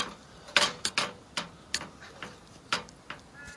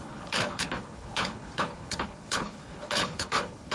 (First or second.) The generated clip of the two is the second